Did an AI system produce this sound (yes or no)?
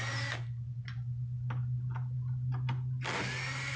no